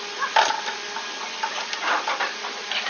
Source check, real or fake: real